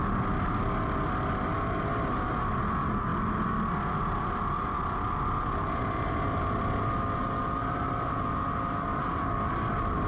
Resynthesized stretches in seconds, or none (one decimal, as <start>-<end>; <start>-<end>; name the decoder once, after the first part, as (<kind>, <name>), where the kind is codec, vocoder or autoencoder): none